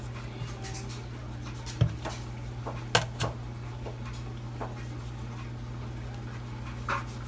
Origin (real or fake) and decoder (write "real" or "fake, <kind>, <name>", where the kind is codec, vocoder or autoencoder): real